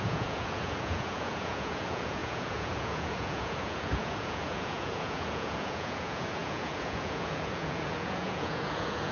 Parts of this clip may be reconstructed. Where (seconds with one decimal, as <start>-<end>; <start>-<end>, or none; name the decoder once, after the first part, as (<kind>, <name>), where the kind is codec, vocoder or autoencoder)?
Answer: 0.0-9.1 (vocoder, Vocos)